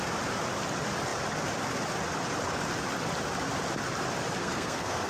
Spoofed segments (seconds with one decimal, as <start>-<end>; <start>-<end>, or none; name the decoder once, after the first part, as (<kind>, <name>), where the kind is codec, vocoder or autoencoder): 4.4-5.1 (codec, SNAC)